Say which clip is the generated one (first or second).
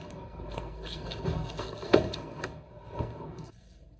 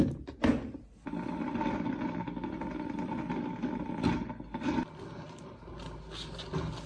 first